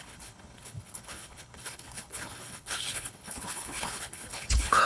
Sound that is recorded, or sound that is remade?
remade